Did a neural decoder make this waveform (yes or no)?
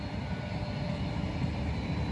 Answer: no